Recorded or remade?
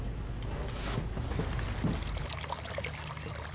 recorded